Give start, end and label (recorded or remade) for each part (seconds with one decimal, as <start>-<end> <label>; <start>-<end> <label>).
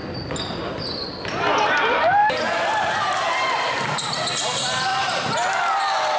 0.0-2.2 recorded; 2.2-4.1 remade; 4.1-4.9 recorded; 4.9-5.6 remade; 5.6-6.2 recorded